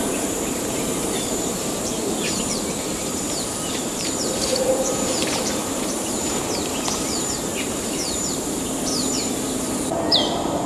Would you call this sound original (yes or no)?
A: no